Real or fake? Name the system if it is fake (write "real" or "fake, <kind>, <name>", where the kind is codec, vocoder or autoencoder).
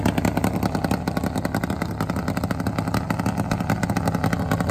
real